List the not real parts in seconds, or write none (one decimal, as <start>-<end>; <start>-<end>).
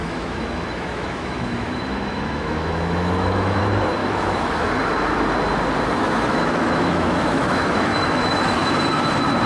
0.0-3.6; 4.0-4.7; 6.0-8.7